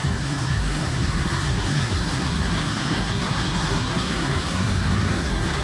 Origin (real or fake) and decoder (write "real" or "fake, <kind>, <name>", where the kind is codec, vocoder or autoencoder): fake, codec, SNAC